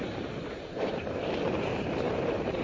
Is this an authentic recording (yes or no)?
no